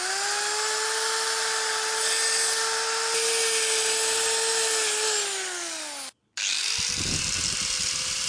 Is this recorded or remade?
recorded